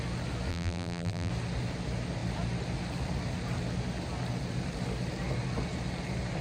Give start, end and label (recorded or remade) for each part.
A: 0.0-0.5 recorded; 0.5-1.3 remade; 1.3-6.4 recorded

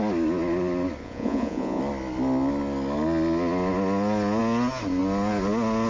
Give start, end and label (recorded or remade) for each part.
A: 0.0-1.0 recorded; 1.0-1.8 remade; 1.8-5.9 recorded

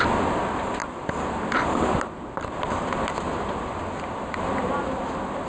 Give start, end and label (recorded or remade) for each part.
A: 0.0-5.5 recorded

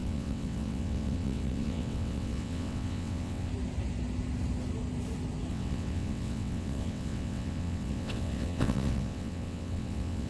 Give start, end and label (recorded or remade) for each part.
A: 0.0-3.5 remade; 3.5-5.5 recorded; 5.5-10.3 remade

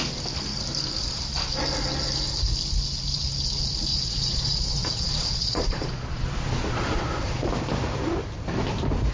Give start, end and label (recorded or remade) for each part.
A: 0.0-3.9 recorded; 3.9-7.5 remade; 7.5-9.1 recorded